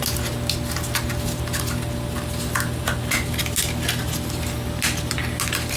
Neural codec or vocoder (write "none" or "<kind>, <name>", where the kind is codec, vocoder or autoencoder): none